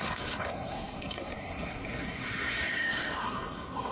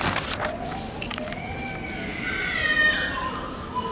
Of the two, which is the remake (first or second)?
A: first